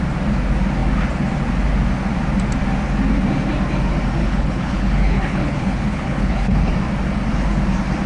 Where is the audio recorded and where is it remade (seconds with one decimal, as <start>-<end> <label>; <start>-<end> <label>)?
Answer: 0.0-4.2 recorded; 4.2-6.7 remade; 6.7-8.1 recorded